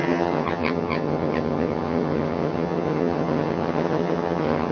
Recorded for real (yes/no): no